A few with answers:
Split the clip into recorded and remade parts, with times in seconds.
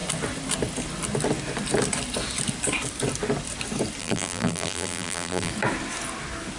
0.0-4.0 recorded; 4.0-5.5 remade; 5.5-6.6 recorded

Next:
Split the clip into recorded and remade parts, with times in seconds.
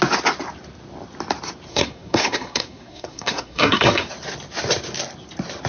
0.0-1.7 recorded; 1.7-4.1 remade; 4.1-5.7 recorded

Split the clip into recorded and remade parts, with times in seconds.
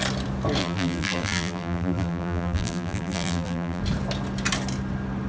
0.0-0.6 recorded; 0.6-3.8 remade; 3.8-5.3 recorded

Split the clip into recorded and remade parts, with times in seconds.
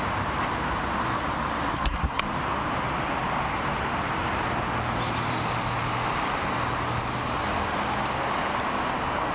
0.0-1.7 recorded; 1.7-2.2 remade; 2.2-9.3 recorded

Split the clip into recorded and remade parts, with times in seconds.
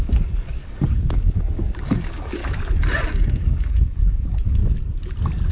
0.0-2.4 remade; 2.4-3.0 recorded; 3.0-4.6 remade; 4.6-5.5 recorded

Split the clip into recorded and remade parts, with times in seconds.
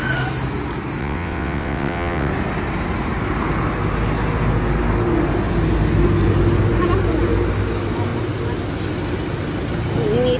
0.0-1.0 recorded; 1.0-2.3 remade; 2.3-10.4 recorded